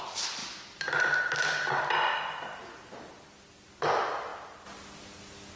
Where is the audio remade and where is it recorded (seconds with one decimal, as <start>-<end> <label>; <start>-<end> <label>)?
0.0-5.6 recorded